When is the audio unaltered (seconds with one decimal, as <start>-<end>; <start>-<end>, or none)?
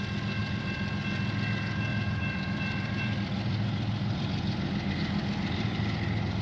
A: 0.0-0.4; 0.9-1.9; 4.9-5.7